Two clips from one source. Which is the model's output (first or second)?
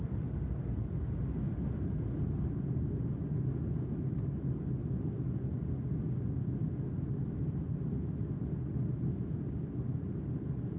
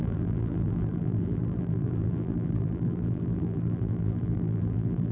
second